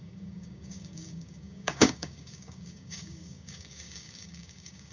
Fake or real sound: fake